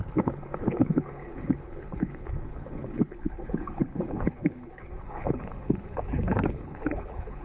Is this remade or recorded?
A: remade